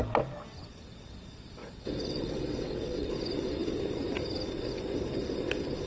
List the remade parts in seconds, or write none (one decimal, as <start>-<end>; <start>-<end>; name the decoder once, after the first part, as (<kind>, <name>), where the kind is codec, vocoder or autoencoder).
1.6-3.1 (vocoder, WaveNeXt)

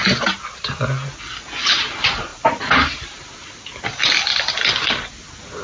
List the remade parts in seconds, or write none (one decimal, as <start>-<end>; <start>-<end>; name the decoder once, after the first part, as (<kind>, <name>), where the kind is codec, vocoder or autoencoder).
none